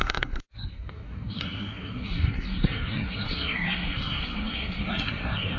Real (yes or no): no